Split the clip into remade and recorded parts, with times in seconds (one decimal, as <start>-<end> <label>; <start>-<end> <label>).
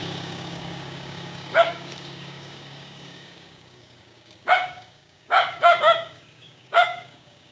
0.0-7.5 remade